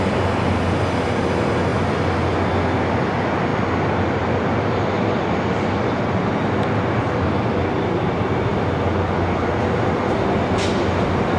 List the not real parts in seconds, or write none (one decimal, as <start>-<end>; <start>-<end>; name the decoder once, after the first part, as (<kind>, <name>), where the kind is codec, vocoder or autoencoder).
none